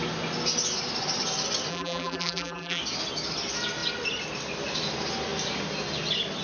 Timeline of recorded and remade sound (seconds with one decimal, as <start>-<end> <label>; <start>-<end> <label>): 0.0-1.7 recorded; 1.7-2.8 remade; 2.8-6.4 recorded